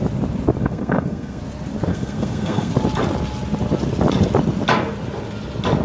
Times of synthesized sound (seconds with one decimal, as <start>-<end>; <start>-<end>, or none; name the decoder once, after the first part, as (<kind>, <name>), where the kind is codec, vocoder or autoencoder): 0.6-1.4 (codec, SNAC); 1.9-2.7